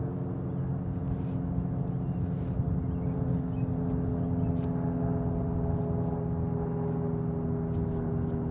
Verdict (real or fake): real